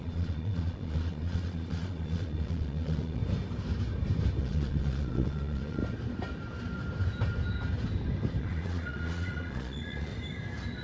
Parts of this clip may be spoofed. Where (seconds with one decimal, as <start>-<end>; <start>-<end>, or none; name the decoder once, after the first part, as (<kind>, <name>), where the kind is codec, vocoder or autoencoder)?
0.0-3.2 (vocoder, Vocos); 4.4-5.8; 8.4-10.1